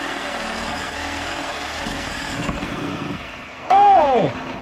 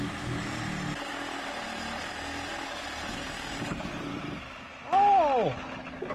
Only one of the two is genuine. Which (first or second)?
second